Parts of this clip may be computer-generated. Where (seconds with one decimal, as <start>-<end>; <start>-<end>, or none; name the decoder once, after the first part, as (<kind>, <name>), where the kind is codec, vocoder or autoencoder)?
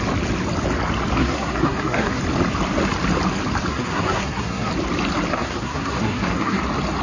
1.2-2.2 (codec, SNAC); 3.7-4.7; 5.3-6.6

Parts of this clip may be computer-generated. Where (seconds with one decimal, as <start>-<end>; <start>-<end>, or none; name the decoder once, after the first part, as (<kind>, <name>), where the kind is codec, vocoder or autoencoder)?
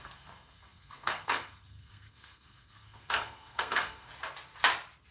0.0-4.1 (codec, SNAC)